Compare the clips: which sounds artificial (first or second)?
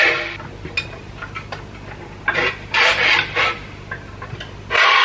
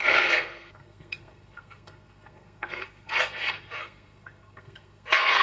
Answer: second